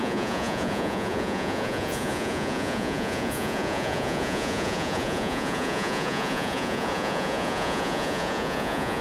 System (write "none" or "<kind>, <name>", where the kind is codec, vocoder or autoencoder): vocoder, Vocos